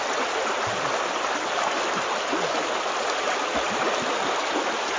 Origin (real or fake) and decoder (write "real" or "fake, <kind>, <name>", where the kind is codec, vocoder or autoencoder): real